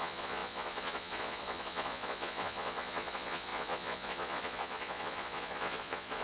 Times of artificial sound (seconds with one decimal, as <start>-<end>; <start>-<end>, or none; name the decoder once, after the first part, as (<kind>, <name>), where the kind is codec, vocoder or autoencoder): 0.0-6.2 (vocoder, Vocos)